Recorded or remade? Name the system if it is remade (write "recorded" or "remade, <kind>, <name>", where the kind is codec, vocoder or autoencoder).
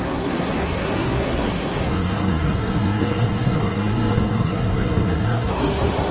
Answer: remade, codec, SNAC